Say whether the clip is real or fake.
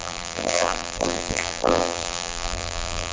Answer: fake